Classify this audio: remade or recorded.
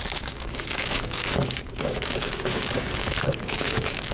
remade